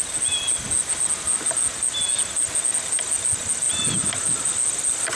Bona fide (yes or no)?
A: yes